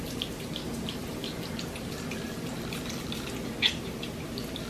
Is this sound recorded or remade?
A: recorded